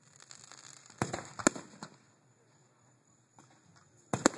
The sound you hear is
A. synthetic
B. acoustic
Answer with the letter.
B